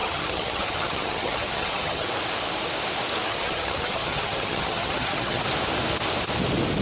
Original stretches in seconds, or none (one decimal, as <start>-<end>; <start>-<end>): 2.1-3.3; 5.4-6.8